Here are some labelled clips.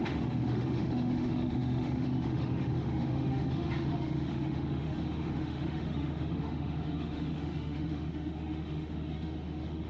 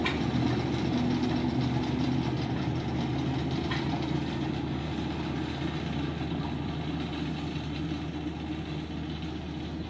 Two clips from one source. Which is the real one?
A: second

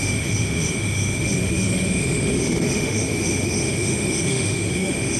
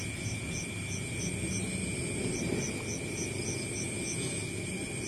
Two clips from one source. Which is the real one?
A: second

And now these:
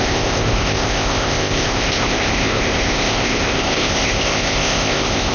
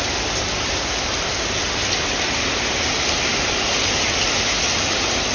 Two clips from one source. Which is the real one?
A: second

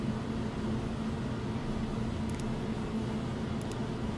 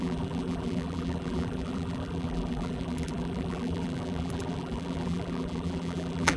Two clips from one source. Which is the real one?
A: first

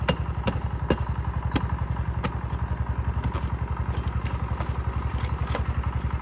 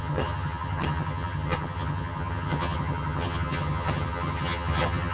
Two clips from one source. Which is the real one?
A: first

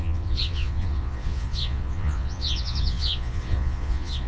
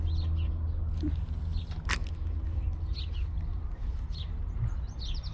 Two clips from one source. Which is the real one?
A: second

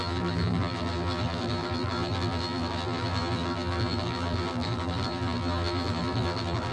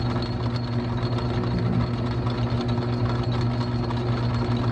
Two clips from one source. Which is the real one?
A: second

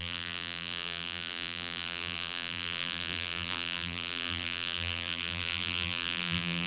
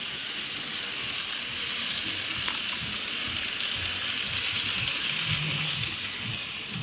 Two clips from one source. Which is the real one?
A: second